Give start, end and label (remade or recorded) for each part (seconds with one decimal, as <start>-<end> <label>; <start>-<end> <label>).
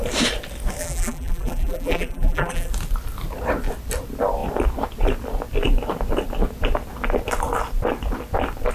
0.0-0.8 recorded; 0.8-2.7 remade; 2.7-8.7 recorded